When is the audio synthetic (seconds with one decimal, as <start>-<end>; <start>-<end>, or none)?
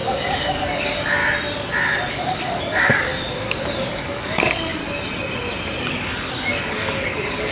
0.0-1.2; 2.1-3.1; 3.8-4.8; 5.8-7.5